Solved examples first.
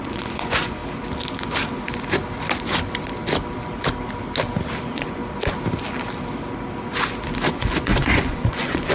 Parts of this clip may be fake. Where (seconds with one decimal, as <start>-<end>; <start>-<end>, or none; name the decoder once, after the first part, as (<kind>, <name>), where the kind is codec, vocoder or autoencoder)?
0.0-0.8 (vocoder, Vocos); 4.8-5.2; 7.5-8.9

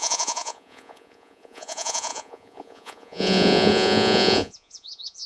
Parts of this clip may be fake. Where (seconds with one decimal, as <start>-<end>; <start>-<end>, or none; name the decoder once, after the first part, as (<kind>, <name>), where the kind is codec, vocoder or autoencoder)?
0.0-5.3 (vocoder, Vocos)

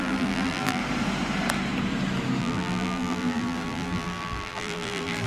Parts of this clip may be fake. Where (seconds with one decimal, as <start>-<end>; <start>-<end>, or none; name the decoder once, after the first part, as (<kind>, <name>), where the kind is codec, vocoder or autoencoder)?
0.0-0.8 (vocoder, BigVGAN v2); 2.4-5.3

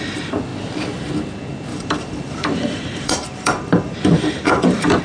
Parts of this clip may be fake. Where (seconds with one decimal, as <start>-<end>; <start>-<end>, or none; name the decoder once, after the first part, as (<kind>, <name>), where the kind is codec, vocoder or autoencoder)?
1.7-5.0 (vocoder, BigVGAN v2)